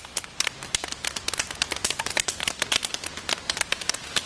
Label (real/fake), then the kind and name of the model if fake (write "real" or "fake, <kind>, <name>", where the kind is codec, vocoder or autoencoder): real